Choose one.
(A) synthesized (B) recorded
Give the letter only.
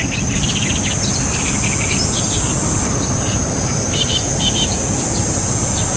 B